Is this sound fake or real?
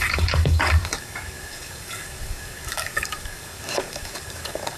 fake